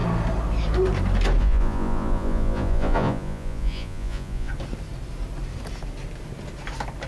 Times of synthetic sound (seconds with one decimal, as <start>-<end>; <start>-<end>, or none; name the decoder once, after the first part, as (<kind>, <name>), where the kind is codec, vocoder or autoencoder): 1.4-4.5 (vocoder, Vocos)